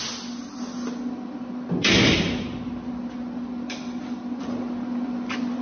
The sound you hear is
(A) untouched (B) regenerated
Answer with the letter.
A